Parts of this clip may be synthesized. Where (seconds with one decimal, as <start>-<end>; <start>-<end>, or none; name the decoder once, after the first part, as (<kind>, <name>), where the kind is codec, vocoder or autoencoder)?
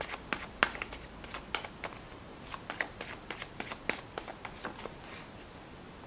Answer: none